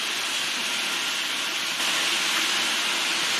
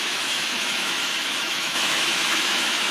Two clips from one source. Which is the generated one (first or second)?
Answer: second